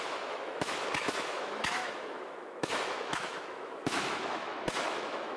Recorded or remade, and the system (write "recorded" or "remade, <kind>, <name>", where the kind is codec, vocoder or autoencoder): remade, autoencoder, DAC-VAE